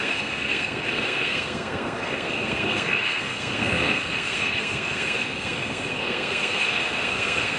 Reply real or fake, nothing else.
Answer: fake